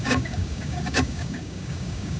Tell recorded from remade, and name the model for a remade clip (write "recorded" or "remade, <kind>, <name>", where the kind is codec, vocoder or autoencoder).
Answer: remade, codec, DAC